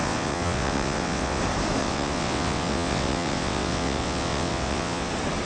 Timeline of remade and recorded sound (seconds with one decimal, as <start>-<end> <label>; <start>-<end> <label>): 0.0-1.4 remade; 1.4-1.8 recorded; 1.8-5.1 remade; 5.1-5.5 recorded